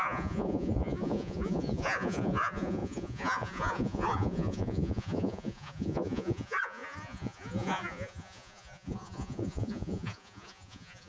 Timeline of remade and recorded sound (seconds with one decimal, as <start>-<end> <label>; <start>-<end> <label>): 0.0-11.1 remade